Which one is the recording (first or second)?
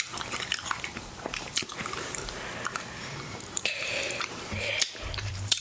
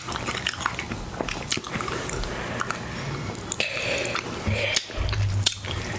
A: second